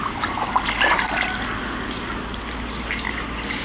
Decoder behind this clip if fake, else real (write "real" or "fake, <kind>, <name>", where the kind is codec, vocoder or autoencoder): real